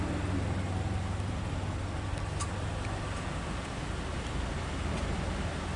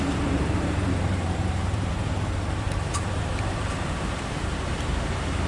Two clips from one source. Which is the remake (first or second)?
second